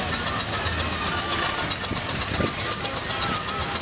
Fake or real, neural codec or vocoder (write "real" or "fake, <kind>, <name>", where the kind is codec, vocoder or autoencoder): real